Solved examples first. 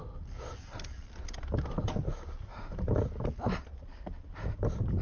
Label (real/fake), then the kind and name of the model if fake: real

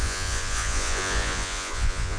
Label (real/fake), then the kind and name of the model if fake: fake, vocoder, Vocos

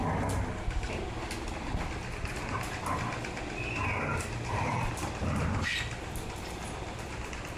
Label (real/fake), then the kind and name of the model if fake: real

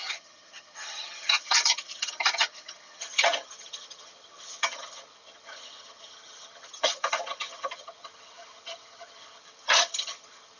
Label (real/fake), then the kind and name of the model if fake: fake, vocoder, HiFi-GAN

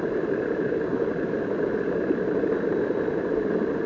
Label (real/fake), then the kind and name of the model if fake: real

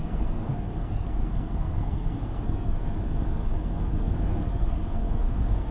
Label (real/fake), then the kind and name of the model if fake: fake, codec, SNAC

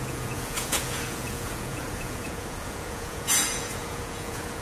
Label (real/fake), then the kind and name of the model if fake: fake, vocoder, Vocos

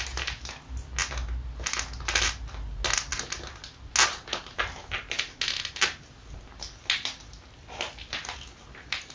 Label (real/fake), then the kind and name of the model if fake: real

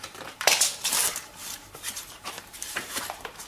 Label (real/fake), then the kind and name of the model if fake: fake, vocoder, BigVGAN v2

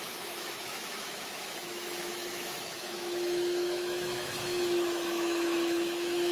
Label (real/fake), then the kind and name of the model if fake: fake, autoencoder, DAC-VAE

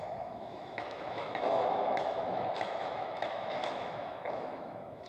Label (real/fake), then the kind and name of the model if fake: fake, autoencoder, DAC-VAE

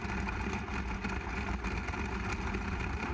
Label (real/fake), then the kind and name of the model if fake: real